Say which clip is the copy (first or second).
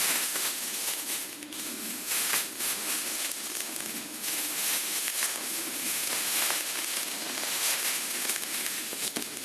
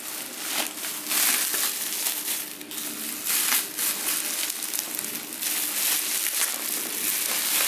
first